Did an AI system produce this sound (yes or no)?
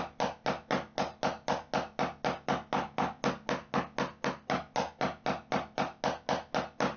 no